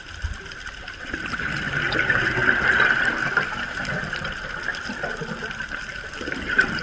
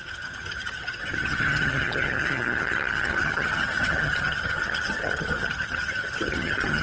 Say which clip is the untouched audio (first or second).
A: first